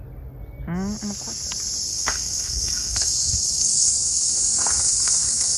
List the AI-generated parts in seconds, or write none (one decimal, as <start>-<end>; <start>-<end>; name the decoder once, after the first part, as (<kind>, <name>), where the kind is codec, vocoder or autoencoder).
1.9-5.6 (codec, SNAC)